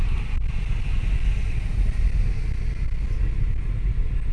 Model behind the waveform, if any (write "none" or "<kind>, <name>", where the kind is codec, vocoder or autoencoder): none